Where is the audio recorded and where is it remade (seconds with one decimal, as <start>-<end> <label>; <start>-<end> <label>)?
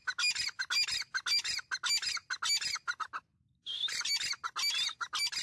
0.0-5.4 recorded